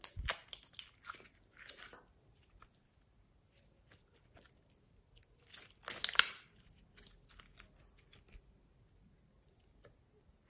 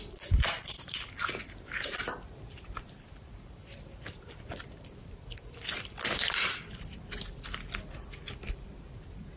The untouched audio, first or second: first